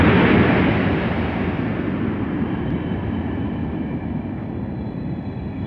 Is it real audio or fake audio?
real